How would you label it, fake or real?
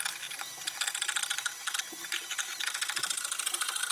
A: real